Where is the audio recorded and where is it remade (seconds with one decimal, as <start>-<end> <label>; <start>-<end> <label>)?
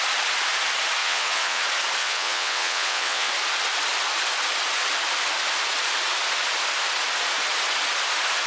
0.0-1.0 recorded; 1.0-1.6 remade; 1.6-2.0 recorded; 2.0-3.3 remade; 3.3-8.5 recorded